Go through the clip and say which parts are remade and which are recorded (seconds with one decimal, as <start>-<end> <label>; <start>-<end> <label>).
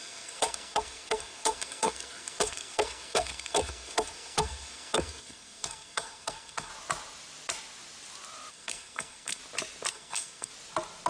0.0-6.7 remade; 6.7-8.5 recorded; 8.5-9.4 remade; 9.4-9.9 recorded; 9.9-10.5 remade; 10.5-11.1 recorded